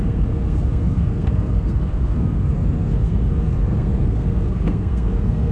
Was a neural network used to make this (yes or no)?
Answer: yes